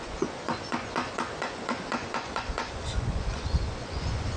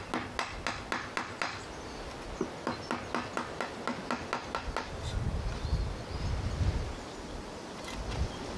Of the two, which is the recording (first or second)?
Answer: second